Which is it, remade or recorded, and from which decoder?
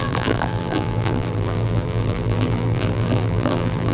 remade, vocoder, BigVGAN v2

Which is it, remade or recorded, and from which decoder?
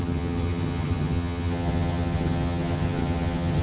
remade, vocoder, HiFi-GAN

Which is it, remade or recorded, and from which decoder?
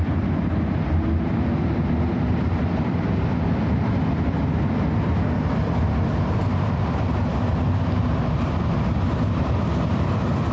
recorded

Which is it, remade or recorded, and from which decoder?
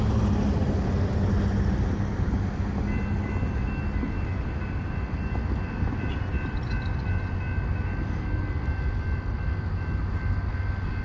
recorded